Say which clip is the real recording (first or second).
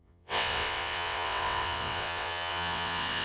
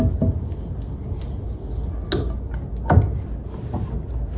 second